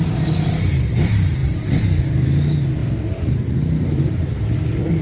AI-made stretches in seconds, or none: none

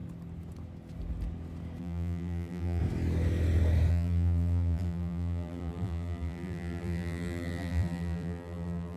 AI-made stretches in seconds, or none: 1.8-2.8 (vocoder, BigVGAN v2); 3.9-9.0

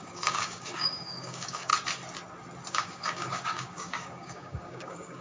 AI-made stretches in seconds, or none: 0.0-1.7 (codec, DAC); 2.7-5.2

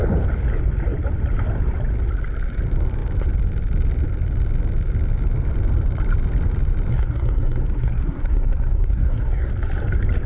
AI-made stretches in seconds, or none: 6.9-9.5 (codec, SNAC)

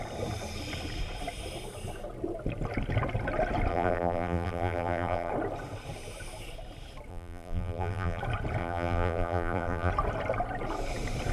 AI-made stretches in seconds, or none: 3.7-5.3 (vocoder, BigVGAN v2); 7.1-8.2; 8.6-9.9